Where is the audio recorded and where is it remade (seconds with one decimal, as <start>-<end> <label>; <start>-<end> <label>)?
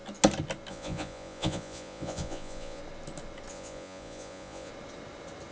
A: 0.0-0.7 recorded; 0.7-2.8 remade; 2.8-3.5 recorded; 3.5-4.7 remade; 4.7-5.5 recorded